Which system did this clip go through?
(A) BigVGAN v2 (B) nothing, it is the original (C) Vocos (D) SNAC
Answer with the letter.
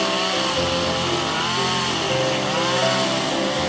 B